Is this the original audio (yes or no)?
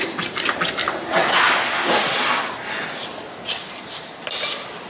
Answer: yes